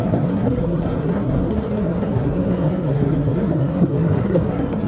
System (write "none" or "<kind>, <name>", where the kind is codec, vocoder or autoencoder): codec, SNAC